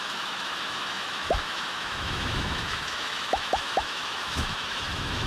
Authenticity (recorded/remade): remade